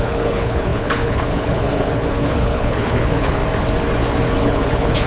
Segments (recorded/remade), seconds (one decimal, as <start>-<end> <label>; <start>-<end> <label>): 0.0-3.4 remade; 3.4-4.4 recorded; 4.4-5.1 remade